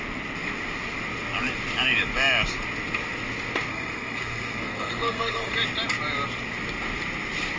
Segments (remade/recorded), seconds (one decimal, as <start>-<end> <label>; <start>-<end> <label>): 0.0-3.7 recorded; 3.7-5.5 remade; 5.5-7.6 recorded